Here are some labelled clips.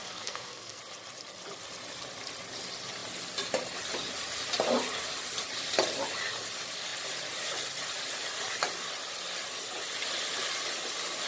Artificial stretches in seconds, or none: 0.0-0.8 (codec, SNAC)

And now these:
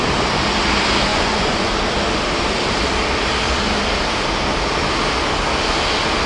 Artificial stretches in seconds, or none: 1.1-1.7 (vocoder, Vocos)

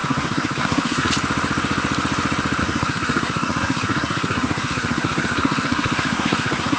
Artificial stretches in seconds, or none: 0.0-1.1 (codec, SNAC); 2.6-6.8